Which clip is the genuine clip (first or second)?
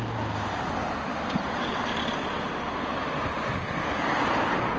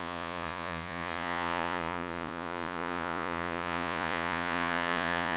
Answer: first